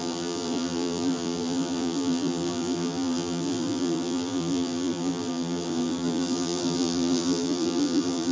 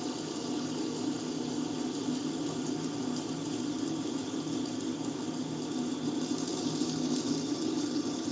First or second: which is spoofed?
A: first